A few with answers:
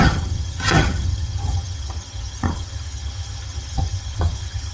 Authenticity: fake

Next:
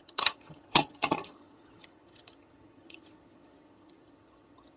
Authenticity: fake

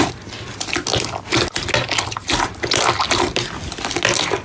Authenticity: real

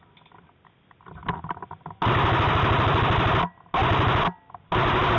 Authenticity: real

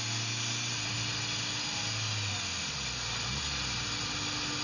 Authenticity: real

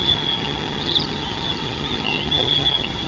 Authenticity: fake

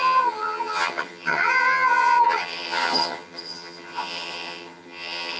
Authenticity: fake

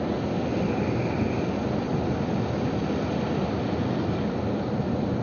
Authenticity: real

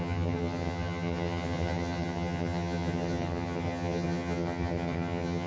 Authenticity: fake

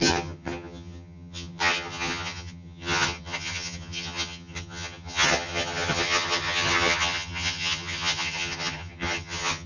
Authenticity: fake